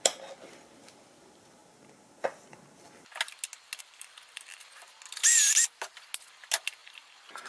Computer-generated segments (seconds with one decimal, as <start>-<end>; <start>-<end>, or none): 6.8-7.5